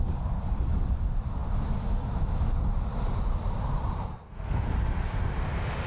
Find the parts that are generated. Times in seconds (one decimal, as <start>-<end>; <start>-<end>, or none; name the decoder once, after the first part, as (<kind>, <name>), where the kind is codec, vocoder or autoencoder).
4.1-4.7 (codec, SNAC)